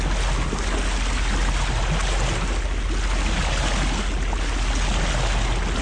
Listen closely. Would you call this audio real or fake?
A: real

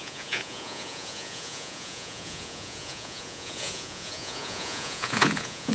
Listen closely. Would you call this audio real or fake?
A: fake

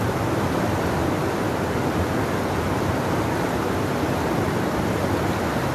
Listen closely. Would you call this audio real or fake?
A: real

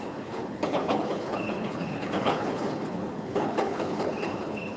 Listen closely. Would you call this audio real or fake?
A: fake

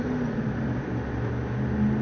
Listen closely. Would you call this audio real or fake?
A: real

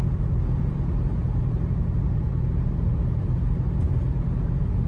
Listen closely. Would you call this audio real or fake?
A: fake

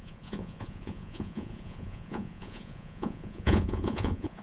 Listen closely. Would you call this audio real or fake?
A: fake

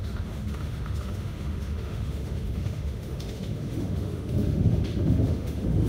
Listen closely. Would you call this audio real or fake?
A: fake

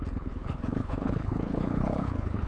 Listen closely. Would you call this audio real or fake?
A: fake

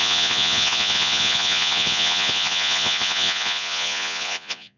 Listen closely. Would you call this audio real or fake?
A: fake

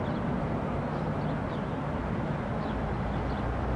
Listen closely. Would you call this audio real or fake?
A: real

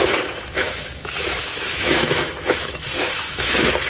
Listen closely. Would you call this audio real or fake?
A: fake